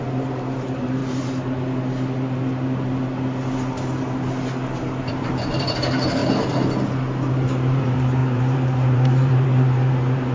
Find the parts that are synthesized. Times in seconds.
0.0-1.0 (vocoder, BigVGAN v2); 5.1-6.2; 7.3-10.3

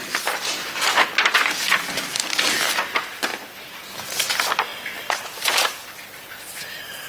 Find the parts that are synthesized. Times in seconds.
none

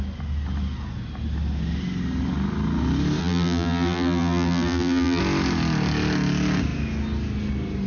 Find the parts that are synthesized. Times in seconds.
3.2-5.2 (vocoder, BigVGAN v2)

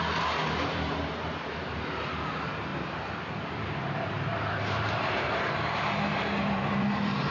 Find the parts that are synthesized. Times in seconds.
0.4-2.1 (vocoder, BigVGAN v2); 2.7-7.3

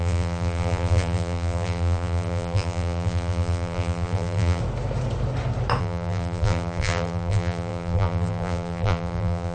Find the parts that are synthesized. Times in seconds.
0.0-4.6 (vocoder, BigVGAN v2); 5.8-9.5

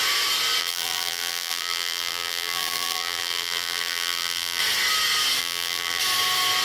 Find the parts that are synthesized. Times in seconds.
0.6-4.6 (vocoder, BigVGAN v2); 5.4-6.0

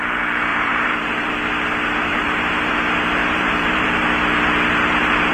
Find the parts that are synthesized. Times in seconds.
0.5-1.3 (vocoder, BigVGAN v2); 2.1-2.7; 3.2-4.0